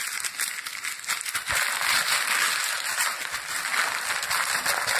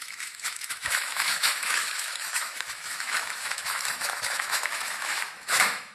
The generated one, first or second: second